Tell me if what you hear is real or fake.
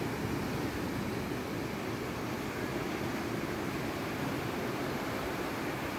real